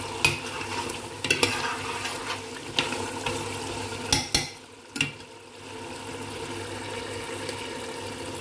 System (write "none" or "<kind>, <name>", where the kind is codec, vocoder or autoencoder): none